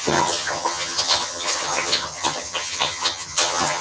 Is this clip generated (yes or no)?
yes